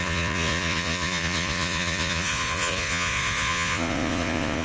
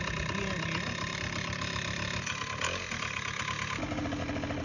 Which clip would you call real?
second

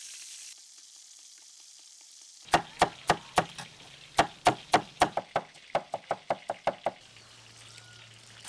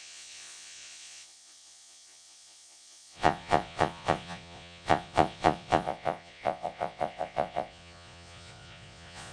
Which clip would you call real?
first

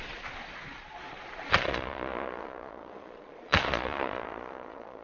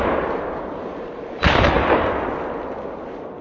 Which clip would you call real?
second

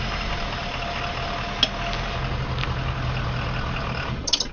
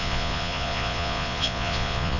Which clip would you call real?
first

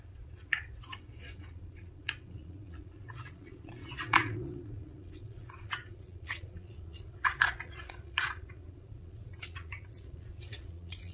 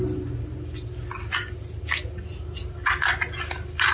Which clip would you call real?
second